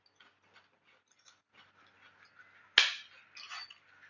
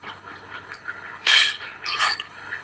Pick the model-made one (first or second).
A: second